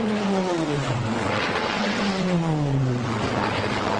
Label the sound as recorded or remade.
remade